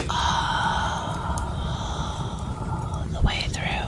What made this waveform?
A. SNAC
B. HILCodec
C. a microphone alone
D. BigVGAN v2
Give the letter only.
D